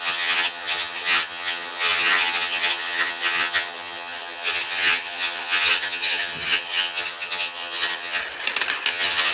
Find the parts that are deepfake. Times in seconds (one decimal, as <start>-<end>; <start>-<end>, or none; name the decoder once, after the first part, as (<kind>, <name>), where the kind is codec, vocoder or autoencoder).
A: 0.0-8.2 (vocoder, HiFi-GAN); 8.9-9.3